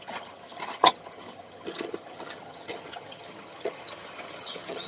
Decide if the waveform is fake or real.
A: fake